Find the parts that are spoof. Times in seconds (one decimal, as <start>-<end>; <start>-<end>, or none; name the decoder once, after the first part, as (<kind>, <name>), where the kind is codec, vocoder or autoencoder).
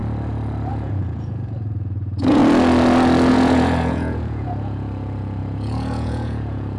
0.7-2.4 (vocoder, Vocos); 3.3-6.8